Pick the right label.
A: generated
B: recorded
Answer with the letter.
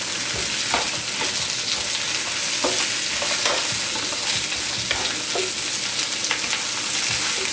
B